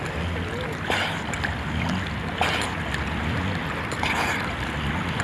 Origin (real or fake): real